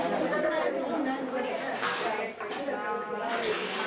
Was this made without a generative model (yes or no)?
yes